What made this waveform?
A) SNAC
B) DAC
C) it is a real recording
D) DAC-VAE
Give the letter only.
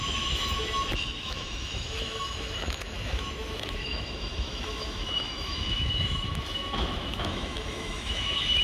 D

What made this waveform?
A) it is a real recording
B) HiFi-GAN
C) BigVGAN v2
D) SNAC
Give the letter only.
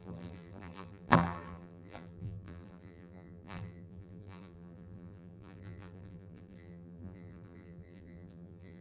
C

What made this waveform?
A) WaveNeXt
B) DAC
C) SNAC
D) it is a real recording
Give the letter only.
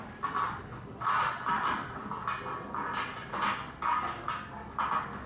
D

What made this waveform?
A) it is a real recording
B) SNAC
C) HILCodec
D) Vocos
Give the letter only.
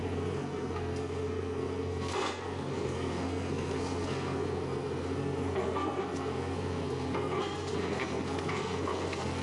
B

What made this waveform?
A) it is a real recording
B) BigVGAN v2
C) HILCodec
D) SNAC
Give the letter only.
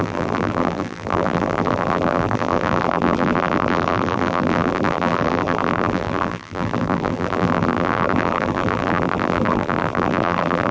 B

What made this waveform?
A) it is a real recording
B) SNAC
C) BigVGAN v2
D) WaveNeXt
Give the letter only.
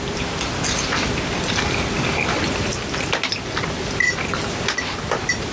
A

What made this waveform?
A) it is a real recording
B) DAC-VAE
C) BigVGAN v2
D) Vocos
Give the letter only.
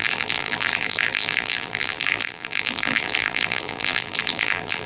C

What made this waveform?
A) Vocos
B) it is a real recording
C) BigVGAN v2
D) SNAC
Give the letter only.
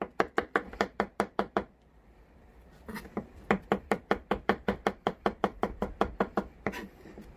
C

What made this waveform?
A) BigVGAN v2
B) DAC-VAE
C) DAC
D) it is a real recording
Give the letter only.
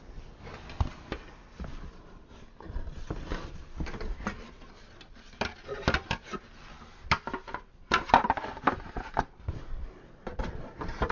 D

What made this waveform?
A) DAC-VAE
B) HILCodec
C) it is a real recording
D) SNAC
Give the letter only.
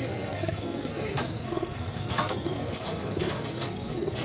D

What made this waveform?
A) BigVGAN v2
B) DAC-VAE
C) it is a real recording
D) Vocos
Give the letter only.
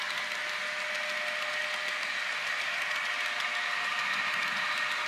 C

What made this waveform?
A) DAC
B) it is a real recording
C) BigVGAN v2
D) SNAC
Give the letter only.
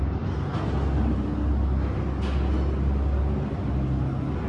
B